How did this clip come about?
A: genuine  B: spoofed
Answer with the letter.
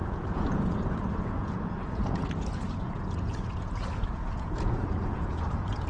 B